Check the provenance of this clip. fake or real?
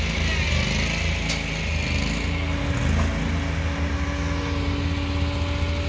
real